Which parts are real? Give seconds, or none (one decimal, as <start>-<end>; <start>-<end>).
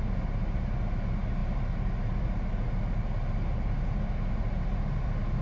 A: 0.0-5.4